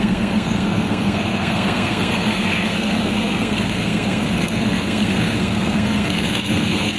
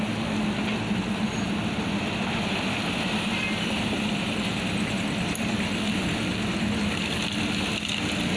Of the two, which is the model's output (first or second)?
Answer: first